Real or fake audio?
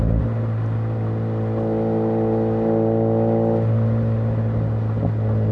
real